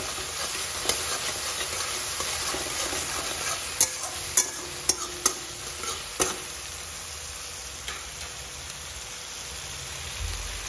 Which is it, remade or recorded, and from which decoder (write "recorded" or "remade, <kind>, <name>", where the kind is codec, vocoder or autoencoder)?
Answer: recorded